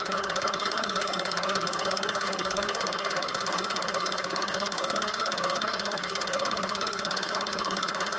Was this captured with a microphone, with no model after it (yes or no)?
no